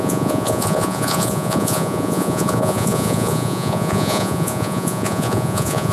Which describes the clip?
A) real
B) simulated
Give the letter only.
B